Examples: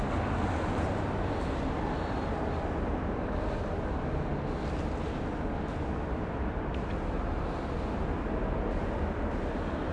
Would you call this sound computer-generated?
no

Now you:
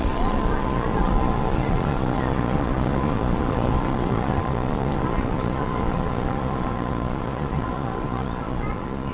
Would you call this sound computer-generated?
yes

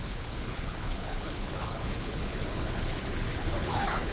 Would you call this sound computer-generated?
yes